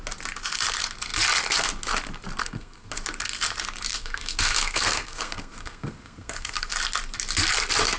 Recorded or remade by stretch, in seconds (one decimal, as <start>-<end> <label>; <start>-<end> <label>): 0.0-2.4 recorded; 2.4-2.9 remade; 2.9-3.9 recorded; 3.9-6.7 remade; 6.7-8.0 recorded